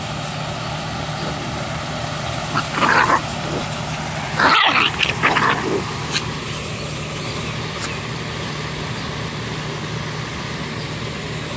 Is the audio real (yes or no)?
yes